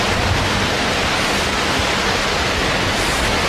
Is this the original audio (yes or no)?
yes